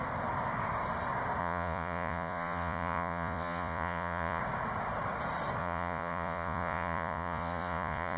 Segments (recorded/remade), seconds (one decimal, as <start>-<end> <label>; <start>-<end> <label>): 0.0-1.4 recorded; 1.4-4.4 remade; 4.4-5.6 recorded; 5.6-8.2 remade